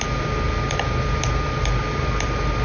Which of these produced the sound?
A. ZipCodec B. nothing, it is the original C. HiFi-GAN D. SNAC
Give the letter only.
B